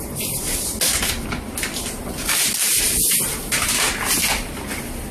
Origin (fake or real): real